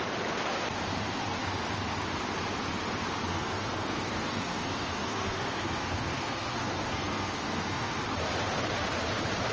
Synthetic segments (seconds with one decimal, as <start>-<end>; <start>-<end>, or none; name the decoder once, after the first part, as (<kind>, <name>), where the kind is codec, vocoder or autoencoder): 3.3-8.0 (codec, SNAC)